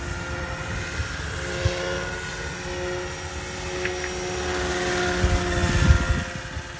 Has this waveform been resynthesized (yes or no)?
no